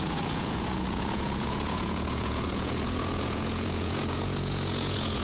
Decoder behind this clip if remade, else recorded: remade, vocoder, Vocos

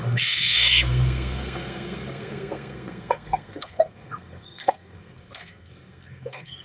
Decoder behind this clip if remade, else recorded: remade, codec, SNAC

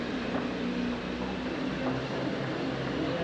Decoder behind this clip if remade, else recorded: recorded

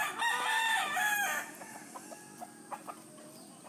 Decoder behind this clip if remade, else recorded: recorded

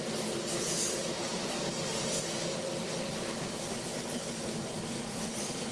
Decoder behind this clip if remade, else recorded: recorded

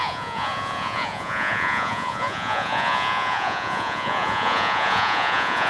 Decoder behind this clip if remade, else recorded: remade, vocoder, Vocos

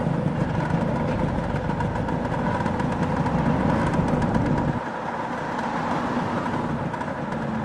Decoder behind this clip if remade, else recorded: recorded